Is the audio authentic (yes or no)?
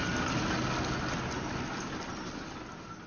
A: yes